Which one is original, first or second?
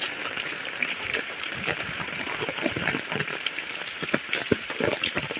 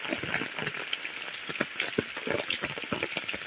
second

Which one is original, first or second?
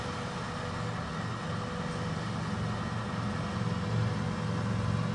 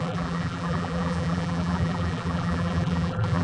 first